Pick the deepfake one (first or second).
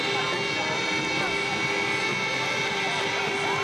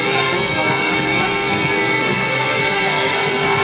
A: second